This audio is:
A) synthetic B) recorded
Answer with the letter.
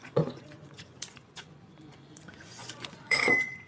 A